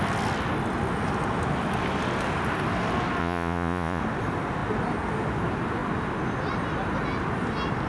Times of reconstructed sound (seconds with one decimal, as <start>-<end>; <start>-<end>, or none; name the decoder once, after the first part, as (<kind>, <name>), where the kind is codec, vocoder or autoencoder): 3.2-4.0 (vocoder, Vocos)